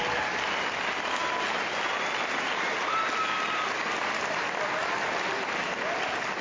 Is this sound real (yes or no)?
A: yes